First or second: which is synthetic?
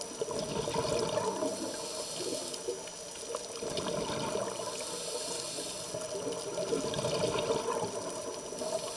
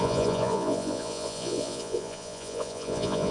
second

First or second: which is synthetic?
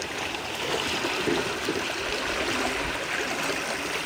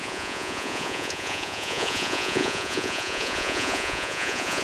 second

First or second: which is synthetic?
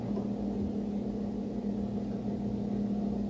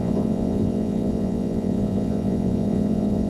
second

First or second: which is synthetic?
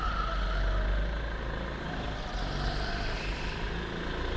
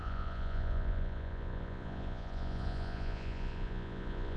second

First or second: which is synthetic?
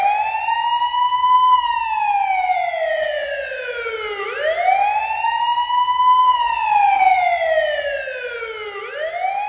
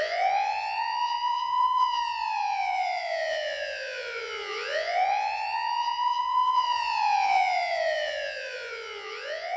second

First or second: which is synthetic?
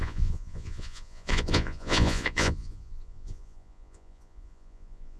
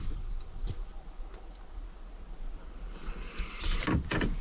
first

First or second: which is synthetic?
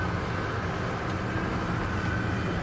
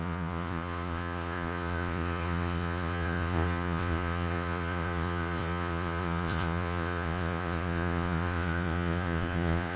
second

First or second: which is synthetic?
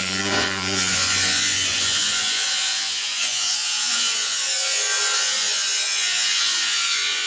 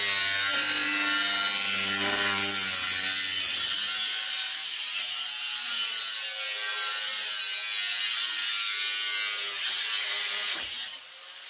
first